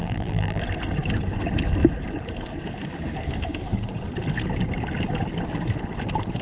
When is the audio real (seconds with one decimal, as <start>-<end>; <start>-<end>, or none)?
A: 0.6-6.4